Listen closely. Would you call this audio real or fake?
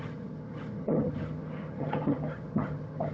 fake